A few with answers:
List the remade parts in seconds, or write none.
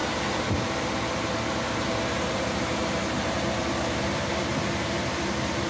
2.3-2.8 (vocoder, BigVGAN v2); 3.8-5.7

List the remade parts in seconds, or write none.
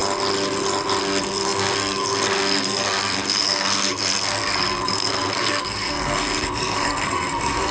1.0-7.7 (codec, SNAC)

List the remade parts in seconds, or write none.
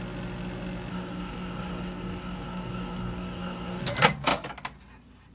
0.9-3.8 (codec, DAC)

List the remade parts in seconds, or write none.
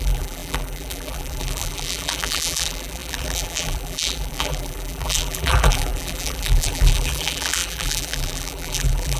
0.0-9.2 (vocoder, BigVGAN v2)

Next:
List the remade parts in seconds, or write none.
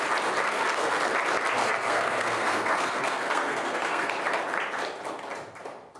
0.4-1.0 (codec, SNAC); 1.6-4.1